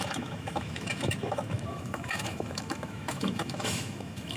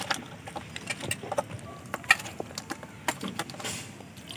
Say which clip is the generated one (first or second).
first